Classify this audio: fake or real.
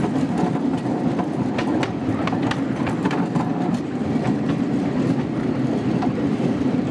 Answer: real